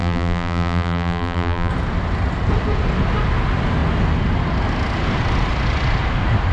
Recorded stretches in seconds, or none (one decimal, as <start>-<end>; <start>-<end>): 1.7-6.5